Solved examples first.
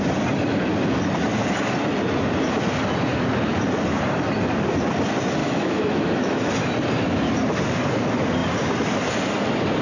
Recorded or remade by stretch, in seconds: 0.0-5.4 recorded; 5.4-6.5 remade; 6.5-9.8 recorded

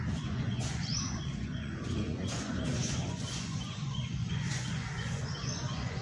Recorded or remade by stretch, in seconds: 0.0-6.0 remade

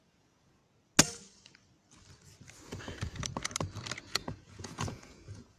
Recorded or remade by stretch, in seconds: 0.0-0.6 remade; 0.6-4.0 recorded; 4.0-5.6 remade